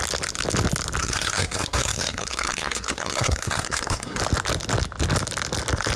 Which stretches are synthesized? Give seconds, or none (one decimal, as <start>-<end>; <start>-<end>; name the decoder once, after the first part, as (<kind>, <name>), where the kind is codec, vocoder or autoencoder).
1.0-4.2 (codec, SNAC)